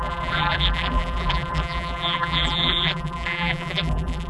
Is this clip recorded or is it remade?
remade